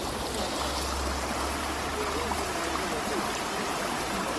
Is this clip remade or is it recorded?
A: recorded